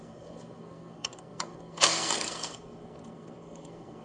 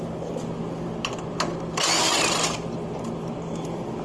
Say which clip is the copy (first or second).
first